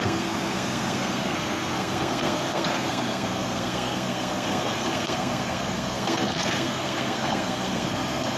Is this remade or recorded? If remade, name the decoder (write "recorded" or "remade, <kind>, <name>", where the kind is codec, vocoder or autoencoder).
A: remade, codec, SNAC